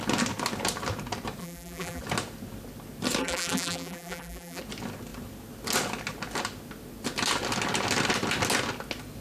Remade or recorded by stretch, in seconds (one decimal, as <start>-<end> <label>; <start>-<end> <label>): 0.0-1.4 recorded; 1.4-2.0 remade; 2.0-3.2 recorded; 3.2-4.6 remade; 4.6-9.2 recorded